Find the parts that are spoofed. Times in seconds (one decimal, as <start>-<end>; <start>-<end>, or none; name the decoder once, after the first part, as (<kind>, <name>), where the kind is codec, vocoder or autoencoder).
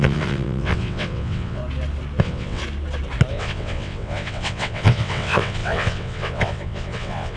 0.0-1.6 (vocoder, WaveNeXt); 2.2-2.6; 3.3-7.4